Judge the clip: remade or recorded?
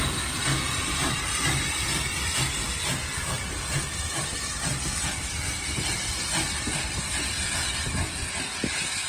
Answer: recorded